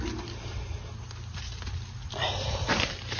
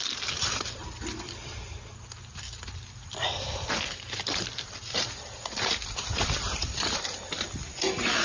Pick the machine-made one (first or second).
second